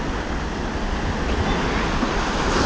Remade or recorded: recorded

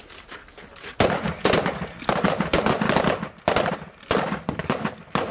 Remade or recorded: recorded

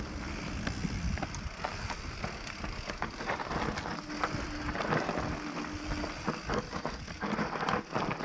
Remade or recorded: recorded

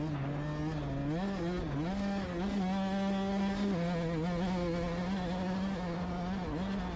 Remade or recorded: recorded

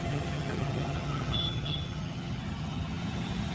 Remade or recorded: remade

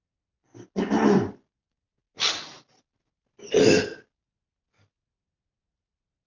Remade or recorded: recorded